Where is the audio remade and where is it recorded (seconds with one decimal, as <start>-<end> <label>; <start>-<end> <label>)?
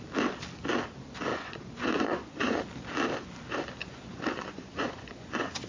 0.0-1.3 recorded; 1.3-2.6 remade; 2.6-3.8 recorded; 3.8-5.7 remade